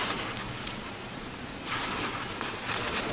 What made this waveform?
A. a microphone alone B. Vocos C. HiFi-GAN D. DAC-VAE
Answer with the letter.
B